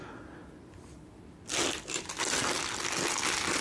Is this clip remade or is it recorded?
recorded